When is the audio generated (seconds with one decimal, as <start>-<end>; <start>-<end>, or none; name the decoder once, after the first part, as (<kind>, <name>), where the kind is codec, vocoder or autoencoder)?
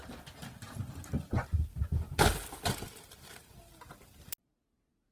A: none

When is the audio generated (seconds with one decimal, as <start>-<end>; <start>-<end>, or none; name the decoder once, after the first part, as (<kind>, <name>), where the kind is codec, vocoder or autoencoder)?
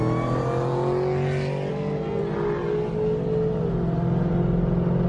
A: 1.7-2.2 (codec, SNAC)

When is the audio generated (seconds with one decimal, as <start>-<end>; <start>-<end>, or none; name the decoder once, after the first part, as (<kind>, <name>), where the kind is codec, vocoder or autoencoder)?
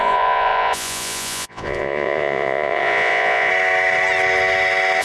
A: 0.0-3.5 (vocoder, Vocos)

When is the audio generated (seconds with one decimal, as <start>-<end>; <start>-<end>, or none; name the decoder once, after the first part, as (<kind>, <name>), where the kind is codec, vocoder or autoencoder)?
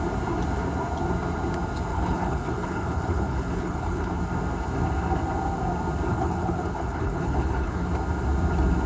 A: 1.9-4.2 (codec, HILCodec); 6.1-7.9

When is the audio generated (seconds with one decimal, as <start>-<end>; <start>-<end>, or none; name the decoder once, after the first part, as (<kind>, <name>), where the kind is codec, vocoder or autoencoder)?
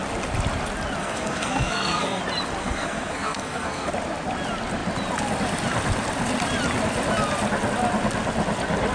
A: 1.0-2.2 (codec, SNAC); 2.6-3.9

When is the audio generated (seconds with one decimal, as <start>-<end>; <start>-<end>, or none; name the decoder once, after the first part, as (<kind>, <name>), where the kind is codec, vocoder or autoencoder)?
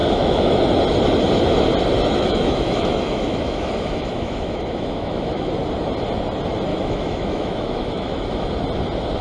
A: 0.0-0.6 (autoencoder, DAC-VAE); 2.1-5.5; 6.7-8.4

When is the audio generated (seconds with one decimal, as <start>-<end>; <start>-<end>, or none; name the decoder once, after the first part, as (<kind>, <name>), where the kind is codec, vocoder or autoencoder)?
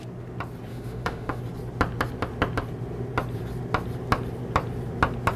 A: 0.7-1.4 (autoencoder, DAC-VAE)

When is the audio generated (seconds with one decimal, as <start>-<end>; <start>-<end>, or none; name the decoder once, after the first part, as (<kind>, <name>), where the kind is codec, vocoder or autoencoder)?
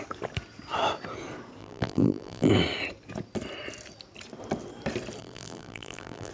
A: 1.6-2.5 (vocoder, BigVGAN v2); 5.2-6.3